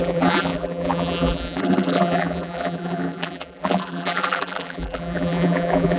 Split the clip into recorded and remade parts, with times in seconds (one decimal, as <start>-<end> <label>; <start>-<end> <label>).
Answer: 0.0-6.0 remade